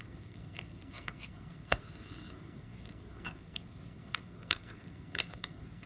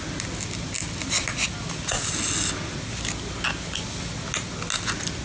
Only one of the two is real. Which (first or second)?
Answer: second